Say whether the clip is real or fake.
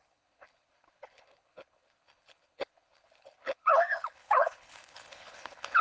fake